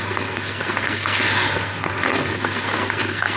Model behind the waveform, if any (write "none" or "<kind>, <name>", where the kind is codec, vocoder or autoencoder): codec, SNAC